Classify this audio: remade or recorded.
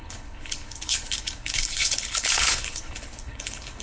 remade